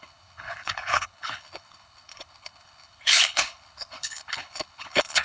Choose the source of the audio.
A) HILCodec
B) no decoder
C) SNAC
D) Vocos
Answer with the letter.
A